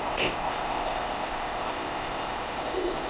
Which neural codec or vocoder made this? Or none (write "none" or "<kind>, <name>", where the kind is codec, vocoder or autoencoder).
codec, ZipCodec